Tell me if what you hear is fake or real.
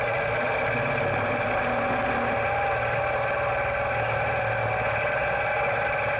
real